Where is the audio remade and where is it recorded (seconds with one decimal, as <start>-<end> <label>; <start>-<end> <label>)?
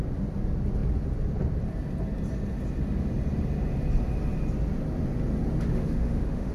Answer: 0.0-5.7 recorded; 5.7-6.5 remade